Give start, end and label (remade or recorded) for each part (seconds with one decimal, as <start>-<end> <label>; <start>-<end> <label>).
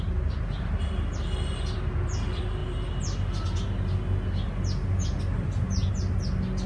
0.0-6.7 recorded